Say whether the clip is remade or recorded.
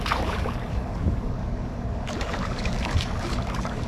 remade